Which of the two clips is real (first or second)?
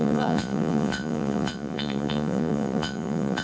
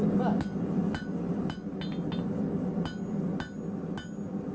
second